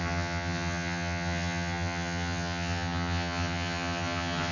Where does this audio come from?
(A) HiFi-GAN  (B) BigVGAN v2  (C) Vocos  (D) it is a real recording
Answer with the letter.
A